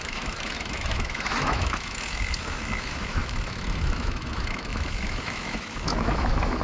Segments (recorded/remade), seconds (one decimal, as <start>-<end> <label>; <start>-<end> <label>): 0.0-6.6 remade